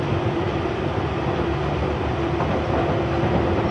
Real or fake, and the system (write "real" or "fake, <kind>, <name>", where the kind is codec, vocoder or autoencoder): fake, vocoder, BigVGAN v2